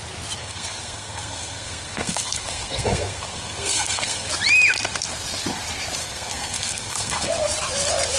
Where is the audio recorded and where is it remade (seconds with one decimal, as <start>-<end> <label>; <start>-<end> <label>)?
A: 0.0-0.4 recorded; 0.4-4.3 remade; 4.3-6.0 recorded; 6.0-7.3 remade; 7.3-8.2 recorded